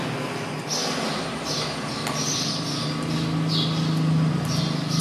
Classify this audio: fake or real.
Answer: real